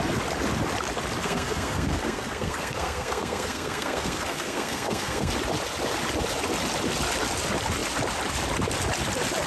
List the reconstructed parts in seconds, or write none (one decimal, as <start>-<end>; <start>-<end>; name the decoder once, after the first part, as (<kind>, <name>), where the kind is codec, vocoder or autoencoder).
1.2-5.3 (codec, SNAC)